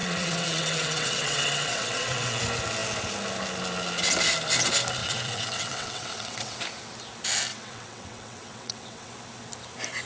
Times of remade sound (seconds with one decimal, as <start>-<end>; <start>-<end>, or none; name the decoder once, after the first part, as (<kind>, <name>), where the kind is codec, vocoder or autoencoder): 0.0-2.4 (vocoder, WaveNeXt); 5.0-6.6; 7.5-9.1